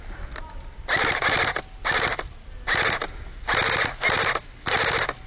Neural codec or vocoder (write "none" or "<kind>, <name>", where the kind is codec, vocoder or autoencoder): none